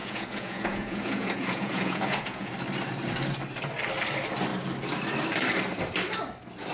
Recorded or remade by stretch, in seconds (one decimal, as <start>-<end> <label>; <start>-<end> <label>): 0.0-2.5 remade; 2.5-6.7 recorded